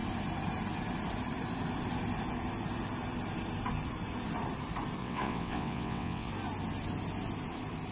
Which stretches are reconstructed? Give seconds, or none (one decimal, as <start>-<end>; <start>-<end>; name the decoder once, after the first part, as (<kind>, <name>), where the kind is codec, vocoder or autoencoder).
5.0-6.3 (vocoder, WaveNeXt)